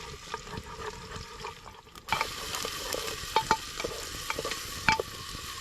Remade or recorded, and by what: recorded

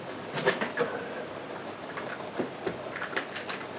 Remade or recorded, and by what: recorded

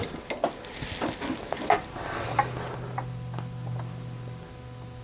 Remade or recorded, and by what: recorded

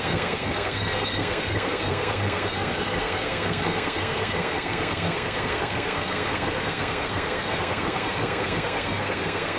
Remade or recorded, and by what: remade, codec, SNAC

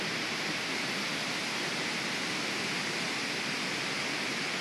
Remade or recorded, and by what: recorded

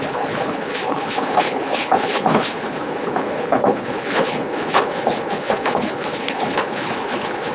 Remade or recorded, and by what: remade, codec, HILCodec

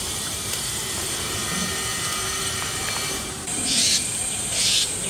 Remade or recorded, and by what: remade, vocoder, BigVGAN v2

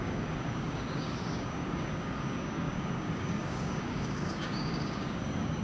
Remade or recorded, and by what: remade, codec, DAC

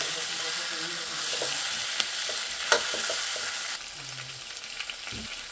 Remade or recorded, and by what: recorded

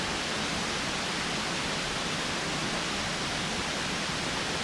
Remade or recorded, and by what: recorded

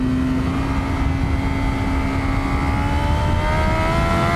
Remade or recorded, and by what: recorded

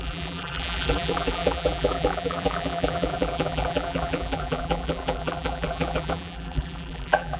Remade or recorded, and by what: remade, vocoder, BigVGAN v2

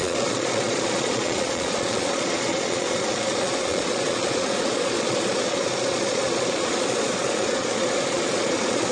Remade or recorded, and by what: remade, vocoder, Vocos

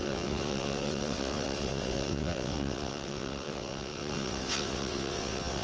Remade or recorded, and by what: remade, vocoder, WaveNeXt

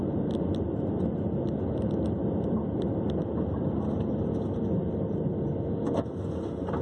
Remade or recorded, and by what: recorded